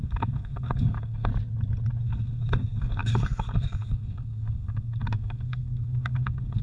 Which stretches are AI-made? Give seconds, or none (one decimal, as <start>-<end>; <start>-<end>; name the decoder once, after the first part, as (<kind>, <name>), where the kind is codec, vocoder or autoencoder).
0.0-1.3 (codec, SNAC); 2.0-6.6